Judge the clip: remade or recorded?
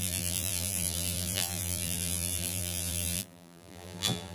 remade